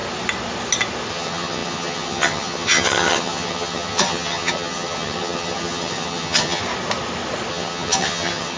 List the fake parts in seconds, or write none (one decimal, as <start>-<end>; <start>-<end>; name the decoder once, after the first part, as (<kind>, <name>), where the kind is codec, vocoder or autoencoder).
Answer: 1.1-6.6 (vocoder, HiFi-GAN); 7.5-8.6